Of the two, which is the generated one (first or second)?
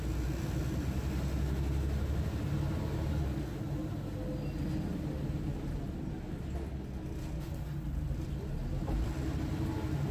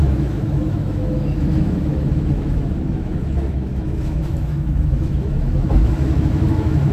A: second